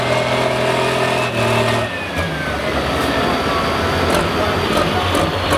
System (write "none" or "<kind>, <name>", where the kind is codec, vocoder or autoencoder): none